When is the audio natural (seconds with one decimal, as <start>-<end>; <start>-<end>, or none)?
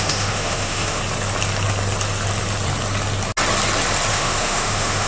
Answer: 1.0-4.1